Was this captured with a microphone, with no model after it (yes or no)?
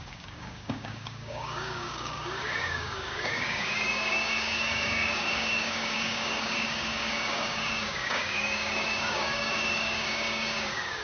no